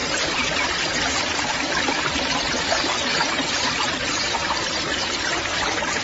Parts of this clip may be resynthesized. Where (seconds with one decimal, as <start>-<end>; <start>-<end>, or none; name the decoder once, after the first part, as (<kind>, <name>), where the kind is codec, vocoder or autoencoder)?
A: 0.0-2.6 (vocoder, BigVGAN v2)